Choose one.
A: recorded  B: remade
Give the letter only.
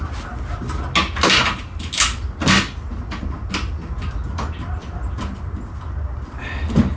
A